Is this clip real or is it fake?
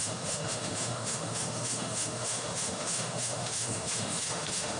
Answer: fake